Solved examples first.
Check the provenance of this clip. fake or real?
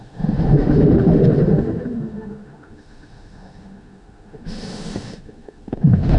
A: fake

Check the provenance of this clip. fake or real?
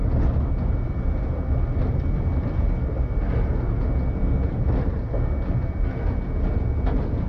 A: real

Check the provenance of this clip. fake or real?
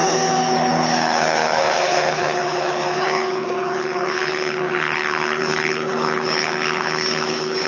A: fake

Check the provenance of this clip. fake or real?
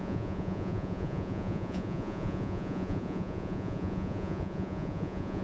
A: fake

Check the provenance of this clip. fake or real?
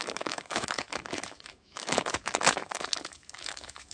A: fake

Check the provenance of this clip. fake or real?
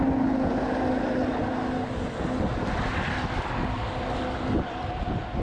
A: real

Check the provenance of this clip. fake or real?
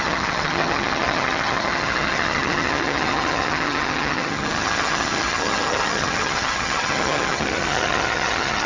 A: fake